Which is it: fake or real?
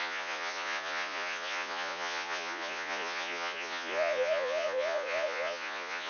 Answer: fake